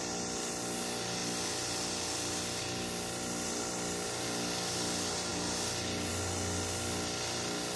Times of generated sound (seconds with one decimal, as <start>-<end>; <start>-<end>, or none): none